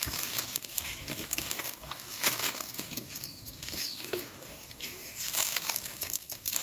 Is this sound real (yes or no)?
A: no